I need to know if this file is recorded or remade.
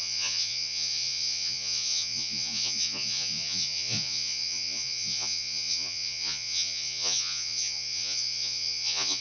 remade